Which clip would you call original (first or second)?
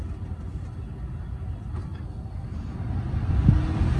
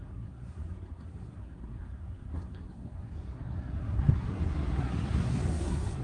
first